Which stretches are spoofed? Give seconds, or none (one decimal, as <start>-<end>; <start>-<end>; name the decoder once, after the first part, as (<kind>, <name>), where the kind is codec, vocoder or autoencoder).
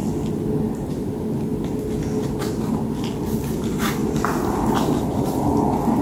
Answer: none